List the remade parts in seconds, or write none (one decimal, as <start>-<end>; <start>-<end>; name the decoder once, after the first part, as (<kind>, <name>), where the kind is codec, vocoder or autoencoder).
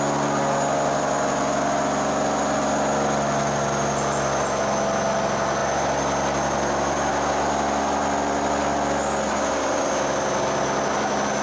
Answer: none